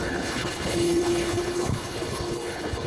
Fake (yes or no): yes